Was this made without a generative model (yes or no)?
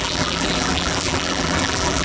no